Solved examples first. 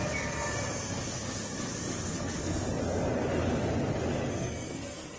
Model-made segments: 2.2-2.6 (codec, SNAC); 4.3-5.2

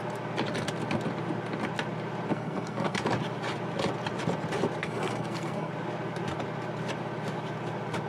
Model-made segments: 2.3-3.0 (codec, SNAC); 4.8-5.7

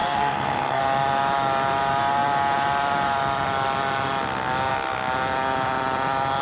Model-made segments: 0.0-0.8 (codec, SNAC)

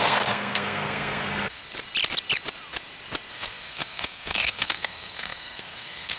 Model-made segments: 0.0-1.6 (codec, SNAC); 3.3-6.2

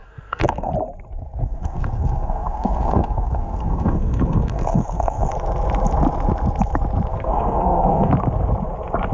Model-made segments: 0.0-0.7 (codec, SNAC); 1.4-5.3; 7.1-8.1

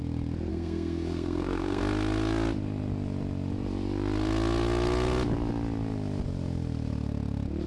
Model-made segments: 0.5-1.8 (codec, SNAC)

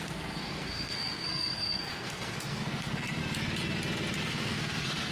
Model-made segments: 0.0-3.2 (codec, SNAC); 4.2-5.1

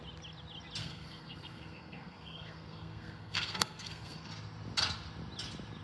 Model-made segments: 0.8-4.3 (codec, SNAC)